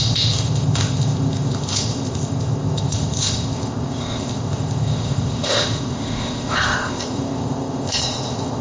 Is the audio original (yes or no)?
no